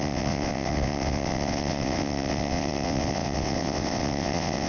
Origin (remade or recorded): remade